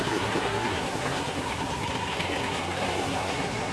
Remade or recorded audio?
remade